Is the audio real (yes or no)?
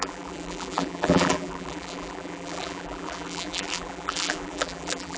no